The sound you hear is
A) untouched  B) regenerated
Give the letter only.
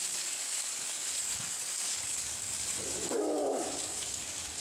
B